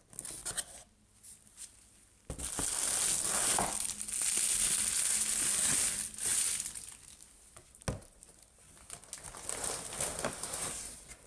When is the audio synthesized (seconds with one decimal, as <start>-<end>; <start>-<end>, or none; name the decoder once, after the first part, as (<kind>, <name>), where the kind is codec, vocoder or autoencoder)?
none